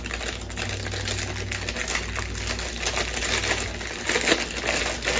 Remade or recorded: recorded